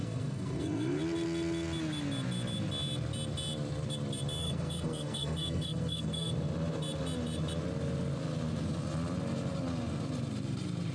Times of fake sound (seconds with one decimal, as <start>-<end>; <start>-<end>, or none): 0.0-1.0; 4.4-6.3

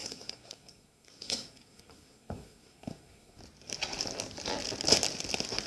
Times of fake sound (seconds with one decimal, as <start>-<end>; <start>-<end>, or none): 0.0-3.4

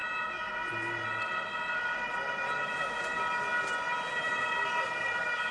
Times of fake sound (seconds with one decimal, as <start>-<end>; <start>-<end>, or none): none

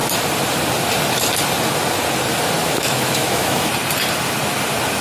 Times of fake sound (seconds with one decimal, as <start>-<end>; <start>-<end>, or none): 2.6-3.7

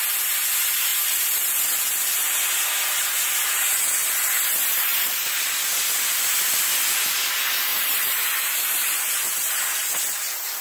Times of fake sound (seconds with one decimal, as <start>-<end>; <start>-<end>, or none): 4.9-5.5; 7.7-9.6

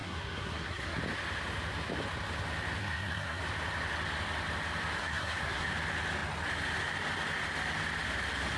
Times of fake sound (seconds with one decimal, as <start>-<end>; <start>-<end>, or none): 0.0-1.0; 2.8-3.4; 5.0-5.7

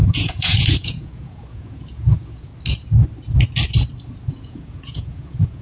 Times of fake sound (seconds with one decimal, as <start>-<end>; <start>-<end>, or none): 0.0-2.5; 4.3-5.6

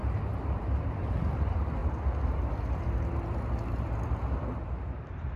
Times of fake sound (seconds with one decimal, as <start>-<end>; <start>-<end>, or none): none